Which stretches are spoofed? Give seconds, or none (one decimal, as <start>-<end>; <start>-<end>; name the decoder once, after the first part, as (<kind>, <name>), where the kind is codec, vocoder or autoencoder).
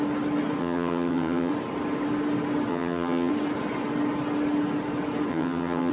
0.6-1.5 (vocoder, HiFi-GAN); 2.7-3.3; 5.3-5.9